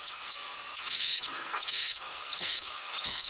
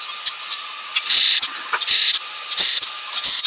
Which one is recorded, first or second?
second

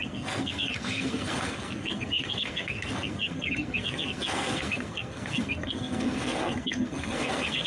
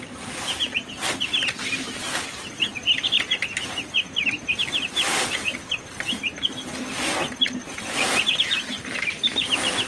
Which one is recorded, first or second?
second